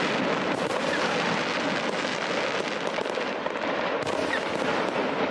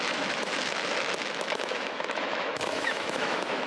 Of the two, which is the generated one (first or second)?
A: second